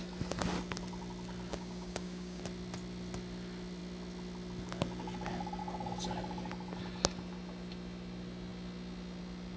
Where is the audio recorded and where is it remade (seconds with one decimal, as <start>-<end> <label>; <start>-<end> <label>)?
0.0-1.5 recorded; 1.5-2.4 remade; 2.4-9.6 recorded